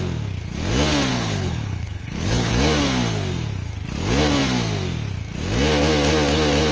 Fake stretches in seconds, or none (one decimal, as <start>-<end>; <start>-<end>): 1.1-2.5